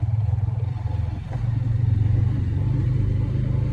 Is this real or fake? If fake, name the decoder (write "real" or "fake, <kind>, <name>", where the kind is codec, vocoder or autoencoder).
fake, vocoder, BigVGAN v2